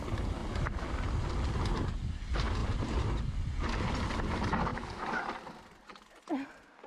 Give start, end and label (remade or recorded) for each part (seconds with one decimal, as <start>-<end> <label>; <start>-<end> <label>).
0.0-2.6 recorded; 2.6-3.2 remade; 3.2-4.7 recorded; 4.7-5.4 remade; 5.4-6.9 recorded